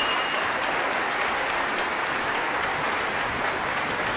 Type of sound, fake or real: fake